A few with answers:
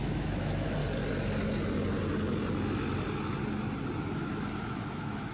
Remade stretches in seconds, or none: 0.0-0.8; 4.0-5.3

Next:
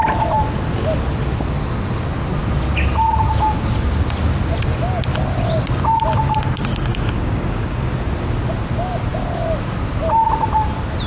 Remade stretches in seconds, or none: 6.4-7.9

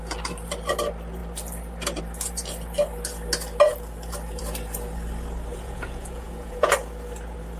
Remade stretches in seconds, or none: 5.5-6.7

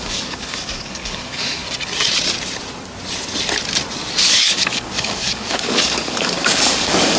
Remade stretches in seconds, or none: 0.0-1.6; 4.3-7.2